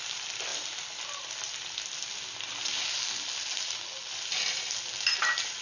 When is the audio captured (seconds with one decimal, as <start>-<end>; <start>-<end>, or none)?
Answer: 0.0-5.6